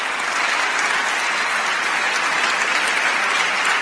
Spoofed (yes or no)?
no